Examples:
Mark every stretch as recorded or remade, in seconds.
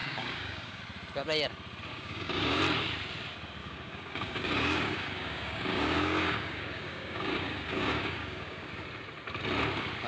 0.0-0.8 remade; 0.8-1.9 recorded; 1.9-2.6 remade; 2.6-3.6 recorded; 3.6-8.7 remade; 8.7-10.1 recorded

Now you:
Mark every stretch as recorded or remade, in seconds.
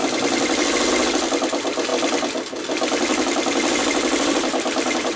0.0-0.9 remade; 0.9-1.9 recorded; 1.9-5.2 remade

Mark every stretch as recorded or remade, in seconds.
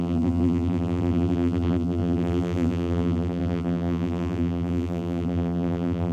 0.0-6.1 remade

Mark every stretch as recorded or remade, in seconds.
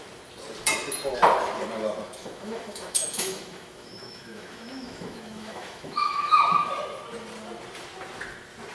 0.0-2.2 recorded; 2.2-6.4 remade; 6.4-8.7 recorded